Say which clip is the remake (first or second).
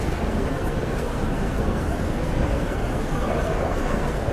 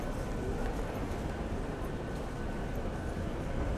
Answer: first